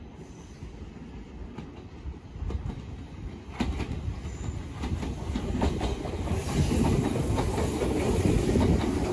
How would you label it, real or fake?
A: real